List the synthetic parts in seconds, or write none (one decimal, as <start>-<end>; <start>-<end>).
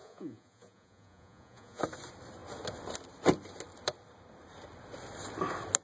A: 0.0-1.8